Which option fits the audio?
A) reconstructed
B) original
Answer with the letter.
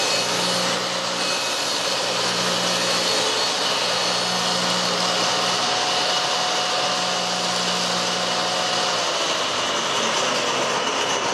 B